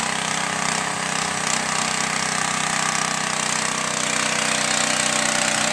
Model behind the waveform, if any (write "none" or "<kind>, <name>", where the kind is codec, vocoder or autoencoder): none